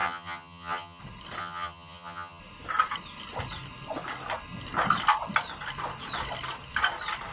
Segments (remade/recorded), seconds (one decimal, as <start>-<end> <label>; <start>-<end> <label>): 0.0-1.0 remade; 1.0-1.4 recorded; 1.4-2.4 remade; 2.4-7.3 recorded